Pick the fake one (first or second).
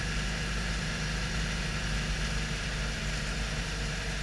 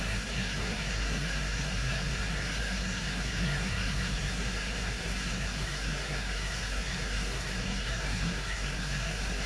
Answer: second